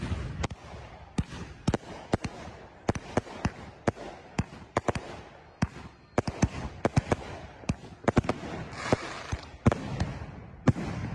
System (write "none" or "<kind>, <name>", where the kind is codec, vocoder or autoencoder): none